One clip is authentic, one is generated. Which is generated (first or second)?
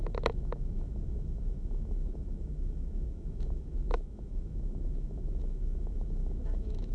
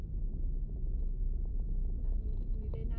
first